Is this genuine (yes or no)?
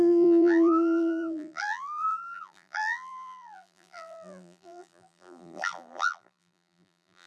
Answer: no